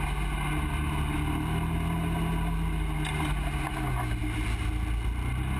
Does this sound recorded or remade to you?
recorded